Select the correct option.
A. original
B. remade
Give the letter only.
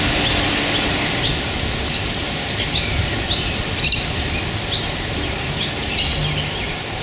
A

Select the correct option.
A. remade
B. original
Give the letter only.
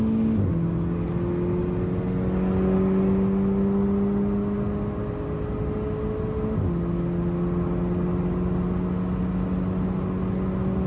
B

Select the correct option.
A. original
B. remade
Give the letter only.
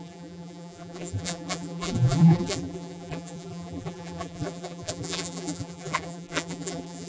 B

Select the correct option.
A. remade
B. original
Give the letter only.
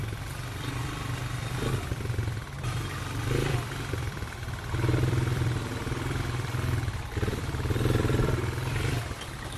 A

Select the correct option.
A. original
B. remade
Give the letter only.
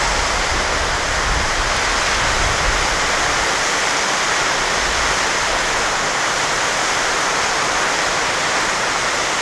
A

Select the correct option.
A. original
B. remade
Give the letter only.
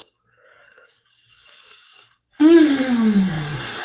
B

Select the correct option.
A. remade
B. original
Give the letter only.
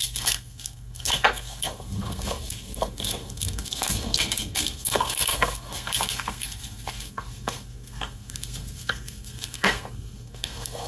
A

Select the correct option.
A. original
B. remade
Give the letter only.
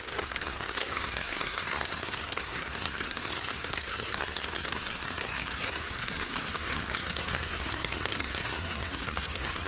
B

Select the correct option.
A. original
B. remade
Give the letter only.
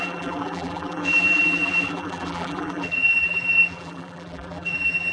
B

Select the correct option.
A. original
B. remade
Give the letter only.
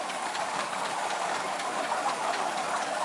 B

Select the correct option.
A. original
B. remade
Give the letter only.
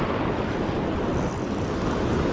A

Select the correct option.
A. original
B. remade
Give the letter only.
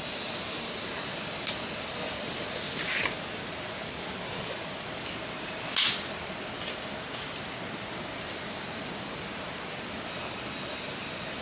A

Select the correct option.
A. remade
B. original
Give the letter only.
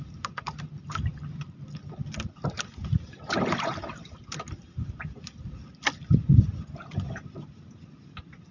B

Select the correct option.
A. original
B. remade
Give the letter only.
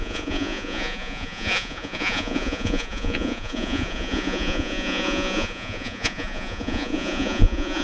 B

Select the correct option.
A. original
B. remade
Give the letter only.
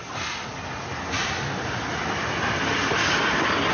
A